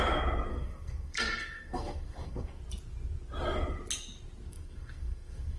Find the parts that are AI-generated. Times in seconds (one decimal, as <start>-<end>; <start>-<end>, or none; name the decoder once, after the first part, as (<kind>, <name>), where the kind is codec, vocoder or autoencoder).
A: 0.5-2.6 (codec, SNAC); 4.5-5.6